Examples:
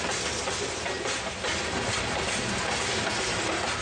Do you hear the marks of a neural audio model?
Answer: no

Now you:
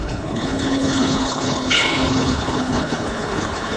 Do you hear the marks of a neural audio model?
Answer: yes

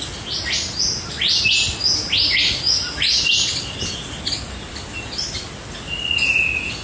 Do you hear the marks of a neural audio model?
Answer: no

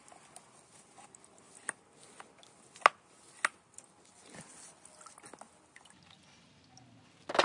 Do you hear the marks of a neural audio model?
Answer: no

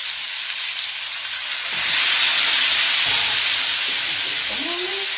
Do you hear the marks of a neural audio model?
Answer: no